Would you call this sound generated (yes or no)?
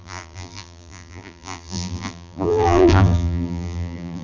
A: yes